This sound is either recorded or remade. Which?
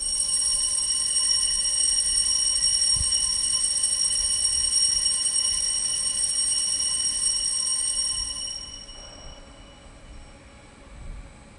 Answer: recorded